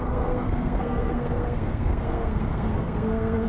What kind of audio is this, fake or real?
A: fake